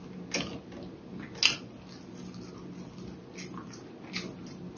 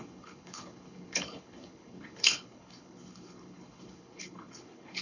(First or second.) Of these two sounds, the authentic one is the first